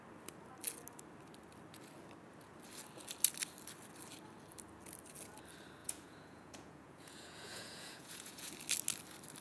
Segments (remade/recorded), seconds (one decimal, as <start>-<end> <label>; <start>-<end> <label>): 0.0-5.8 recorded; 5.8-8.5 remade; 8.5-9.4 recorded